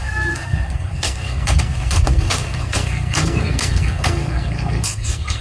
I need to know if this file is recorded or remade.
remade